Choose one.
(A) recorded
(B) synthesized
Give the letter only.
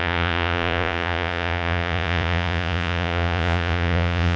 B